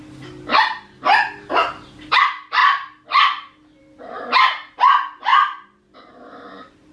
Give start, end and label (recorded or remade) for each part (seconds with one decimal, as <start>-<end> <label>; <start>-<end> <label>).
0.0-2.6 remade; 2.6-3.8 recorded; 3.8-5.3 remade; 5.3-5.8 recorded; 5.8-6.9 remade